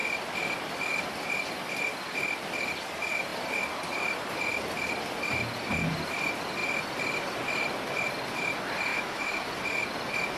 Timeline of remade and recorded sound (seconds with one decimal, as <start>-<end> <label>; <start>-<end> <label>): 0.0-8.9 recorded; 8.9-9.5 remade; 9.5-10.4 recorded